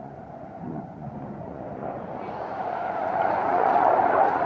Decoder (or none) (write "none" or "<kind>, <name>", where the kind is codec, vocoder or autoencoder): vocoder, Vocos